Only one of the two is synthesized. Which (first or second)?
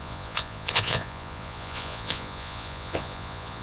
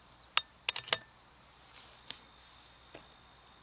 first